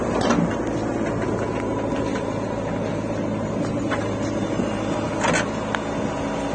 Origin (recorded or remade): recorded